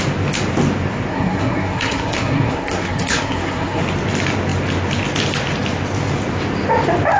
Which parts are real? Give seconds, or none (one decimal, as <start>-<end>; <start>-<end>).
0.0-1.1; 3.8-7.2